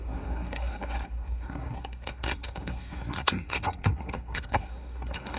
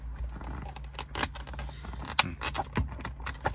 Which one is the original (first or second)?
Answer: second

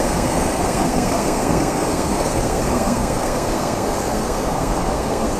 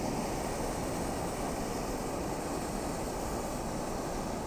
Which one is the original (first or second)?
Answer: second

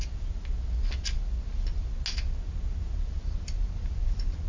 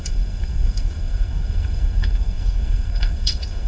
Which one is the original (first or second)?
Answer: first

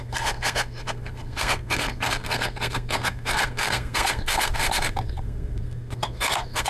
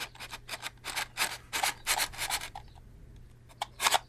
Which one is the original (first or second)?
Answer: second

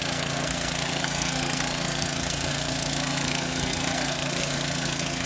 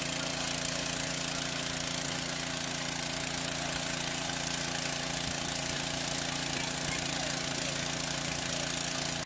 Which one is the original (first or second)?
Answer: second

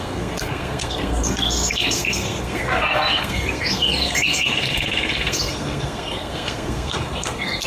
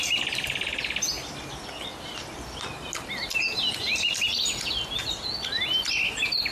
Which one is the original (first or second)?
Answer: second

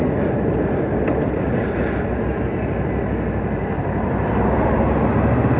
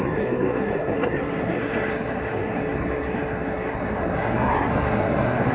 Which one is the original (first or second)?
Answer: first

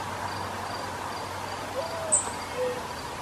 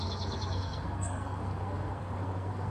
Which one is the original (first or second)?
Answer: first